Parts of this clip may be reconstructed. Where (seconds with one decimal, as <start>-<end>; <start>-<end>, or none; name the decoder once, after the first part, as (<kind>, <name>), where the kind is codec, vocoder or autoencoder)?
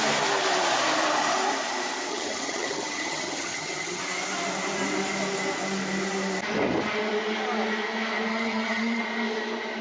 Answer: 2.1-4.0 (vocoder, HiFi-GAN); 8.3-9.0